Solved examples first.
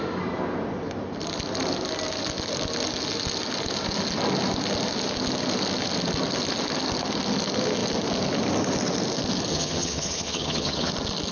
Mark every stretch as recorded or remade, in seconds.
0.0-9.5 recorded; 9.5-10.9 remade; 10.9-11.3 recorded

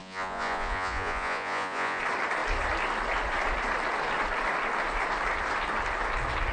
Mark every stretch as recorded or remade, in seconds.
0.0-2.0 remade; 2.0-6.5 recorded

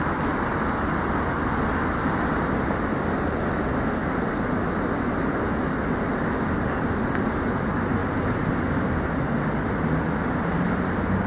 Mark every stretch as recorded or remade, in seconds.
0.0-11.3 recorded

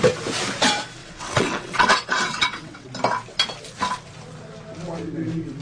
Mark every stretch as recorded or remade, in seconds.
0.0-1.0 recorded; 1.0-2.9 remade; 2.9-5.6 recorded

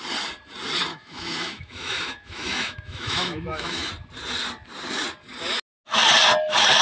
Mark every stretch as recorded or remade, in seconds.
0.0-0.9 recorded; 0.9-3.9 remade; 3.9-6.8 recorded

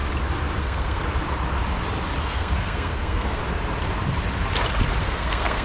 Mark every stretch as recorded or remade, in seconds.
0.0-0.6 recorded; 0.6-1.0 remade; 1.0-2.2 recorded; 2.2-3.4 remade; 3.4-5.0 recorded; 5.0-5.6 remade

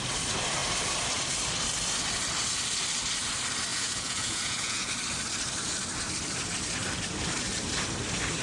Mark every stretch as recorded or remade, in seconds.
0.0-3.7 recorded; 3.7-4.9 remade; 4.9-8.4 recorded